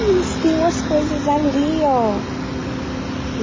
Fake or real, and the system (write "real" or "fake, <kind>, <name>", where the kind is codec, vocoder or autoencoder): real